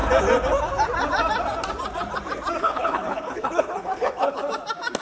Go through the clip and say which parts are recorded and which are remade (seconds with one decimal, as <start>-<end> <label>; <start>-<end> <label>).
0.0-2.6 recorded; 2.6-4.4 remade; 4.4-5.0 recorded